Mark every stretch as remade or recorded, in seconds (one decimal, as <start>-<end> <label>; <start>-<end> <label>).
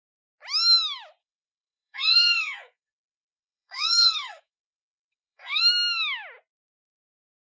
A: 0.0-1.2 recorded; 1.2-5.6 remade; 5.6-7.4 recorded